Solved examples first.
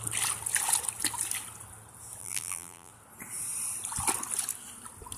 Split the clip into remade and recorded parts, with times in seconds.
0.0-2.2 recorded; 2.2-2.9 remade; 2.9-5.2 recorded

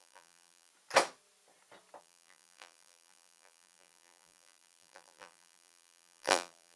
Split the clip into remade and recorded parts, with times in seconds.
0.0-0.7 remade; 0.7-2.0 recorded; 2.0-6.8 remade

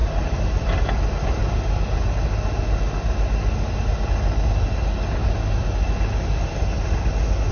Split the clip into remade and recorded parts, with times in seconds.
0.0-0.9 remade; 0.9-7.5 recorded

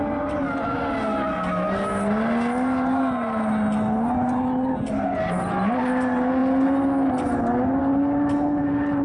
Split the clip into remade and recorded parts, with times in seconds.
0.0-9.0 recorded

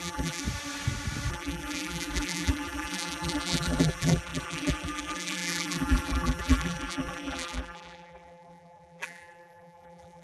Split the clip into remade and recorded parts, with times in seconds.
0.0-0.4 remade; 0.4-1.3 recorded; 1.3-10.2 remade

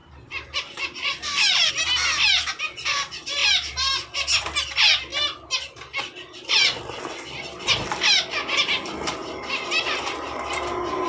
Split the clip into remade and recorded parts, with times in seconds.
0.0-1.7 remade; 1.7-3.4 recorded; 3.4-3.9 remade; 3.9-9.2 recorded; 9.2-11.1 remade

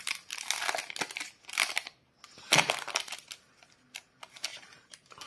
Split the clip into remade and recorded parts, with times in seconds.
0.0-4.5 recorded; 4.5-5.3 remade

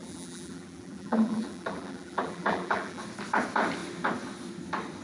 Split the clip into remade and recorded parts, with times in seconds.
0.0-3.0 remade; 3.0-5.0 recorded